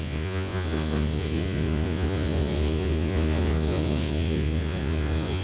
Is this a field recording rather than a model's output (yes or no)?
no